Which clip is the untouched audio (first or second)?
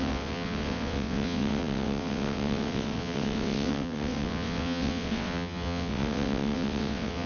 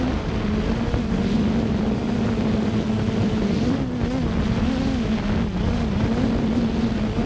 second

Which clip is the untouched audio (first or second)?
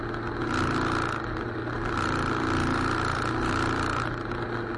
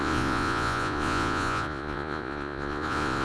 first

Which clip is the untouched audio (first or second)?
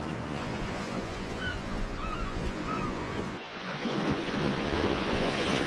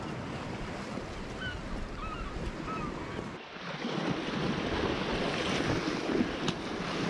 second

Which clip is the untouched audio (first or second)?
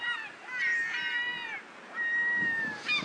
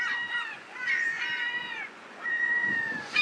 first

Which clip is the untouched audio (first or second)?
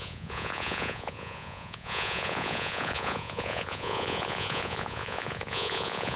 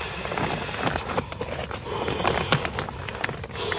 second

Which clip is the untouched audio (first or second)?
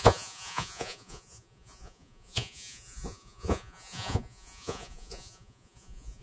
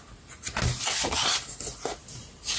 second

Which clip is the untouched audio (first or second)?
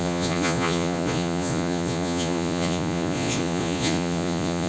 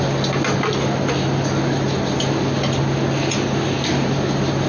second